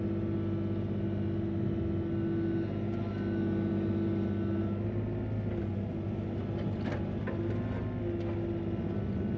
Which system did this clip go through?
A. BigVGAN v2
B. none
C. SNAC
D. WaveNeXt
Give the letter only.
B